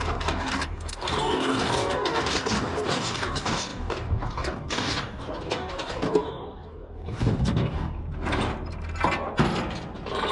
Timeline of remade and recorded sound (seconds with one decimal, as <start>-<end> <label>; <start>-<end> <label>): 0.0-8.0 remade; 8.0-10.3 recorded

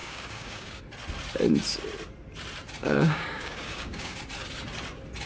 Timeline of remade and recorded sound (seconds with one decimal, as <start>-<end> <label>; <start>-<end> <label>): 0.0-0.8 remade; 0.8-2.8 recorded; 2.8-4.2 remade; 4.2-5.3 recorded

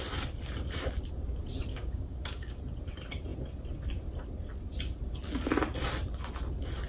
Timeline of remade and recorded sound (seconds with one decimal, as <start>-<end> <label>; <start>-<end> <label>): 0.0-1.7 recorded; 1.7-2.6 remade; 2.6-6.9 recorded

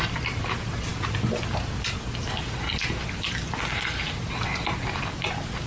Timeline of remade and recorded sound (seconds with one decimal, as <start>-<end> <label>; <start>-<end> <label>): 0.0-5.7 recorded

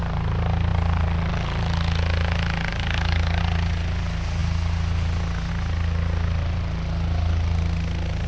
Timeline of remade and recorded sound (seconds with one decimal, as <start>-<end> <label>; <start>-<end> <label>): 0.0-2.7 recorded; 2.7-3.4 remade; 3.4-8.3 recorded